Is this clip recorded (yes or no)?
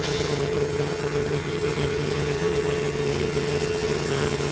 no